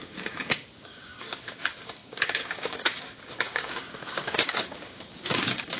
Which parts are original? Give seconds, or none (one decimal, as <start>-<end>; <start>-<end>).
none